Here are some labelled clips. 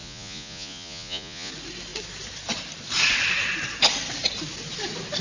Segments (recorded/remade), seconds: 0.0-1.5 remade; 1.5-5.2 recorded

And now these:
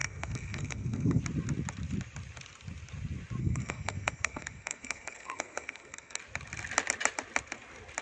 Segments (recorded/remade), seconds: 0.0-1.2 remade; 1.2-3.4 recorded; 3.4-6.2 remade; 6.2-8.0 recorded

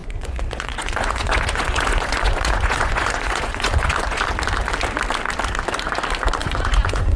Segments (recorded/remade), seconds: 0.0-4.3 remade; 4.3-6.4 recorded; 6.4-7.2 remade

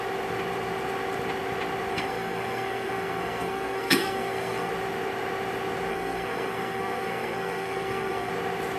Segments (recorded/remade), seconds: 0.0-1.9 recorded; 1.9-4.7 remade; 4.7-5.9 recorded; 5.9-8.3 remade; 8.3-8.8 recorded

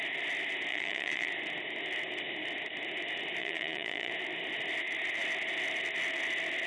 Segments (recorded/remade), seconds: 0.0-0.7 recorded; 0.7-1.3 remade; 1.3-3.4 recorded; 3.4-4.1 remade; 4.1-6.7 recorded

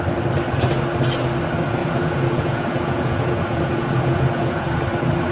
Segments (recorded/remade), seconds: 0.0-1.8 recorded; 1.8-4.8 remade; 4.8-5.3 recorded

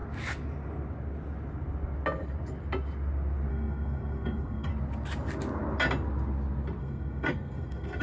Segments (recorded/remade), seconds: 0.0-3.5 recorded; 3.5-4.7 remade; 4.7-6.8 recorded; 6.8-8.0 remade